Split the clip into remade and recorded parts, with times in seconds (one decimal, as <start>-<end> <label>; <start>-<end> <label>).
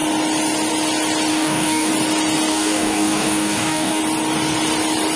0.0-1.3 recorded; 1.3-1.9 remade; 1.9-2.5 recorded; 2.5-4.0 remade; 4.0-5.2 recorded